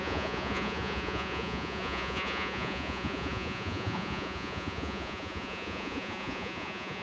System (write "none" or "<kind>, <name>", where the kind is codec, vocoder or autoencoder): vocoder, Vocos